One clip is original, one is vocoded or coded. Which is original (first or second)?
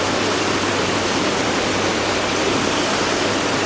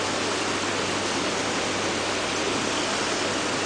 second